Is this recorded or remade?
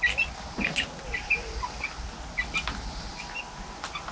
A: recorded